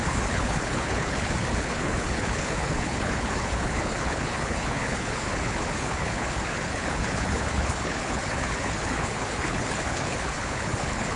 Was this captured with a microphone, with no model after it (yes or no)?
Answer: no